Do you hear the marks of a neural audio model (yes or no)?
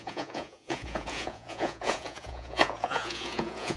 yes